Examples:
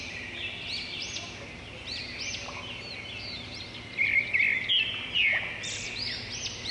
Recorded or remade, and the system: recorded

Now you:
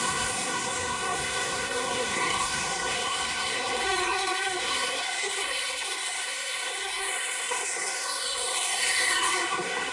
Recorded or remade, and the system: remade, codec, SNAC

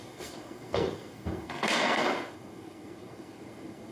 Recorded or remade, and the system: remade, codec, SNAC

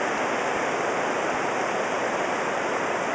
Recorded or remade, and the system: recorded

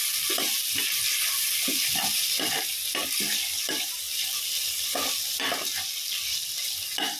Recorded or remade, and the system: recorded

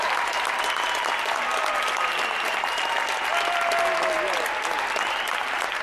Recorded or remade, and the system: recorded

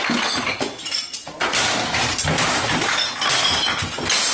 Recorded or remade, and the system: recorded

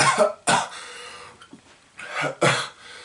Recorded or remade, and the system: recorded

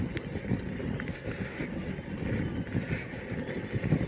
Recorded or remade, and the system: recorded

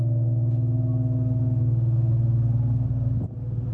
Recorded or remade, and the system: recorded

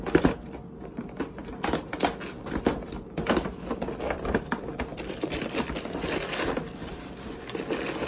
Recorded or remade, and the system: recorded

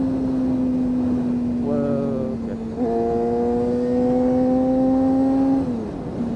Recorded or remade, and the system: recorded